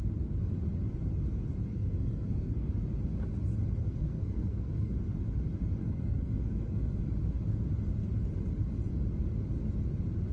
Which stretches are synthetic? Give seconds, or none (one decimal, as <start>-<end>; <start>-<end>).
1.7-2.7; 3.8-4.9; 5.8-7.0